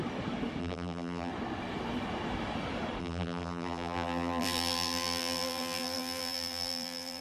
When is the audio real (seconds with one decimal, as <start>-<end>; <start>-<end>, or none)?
0.0-0.6; 1.3-3.0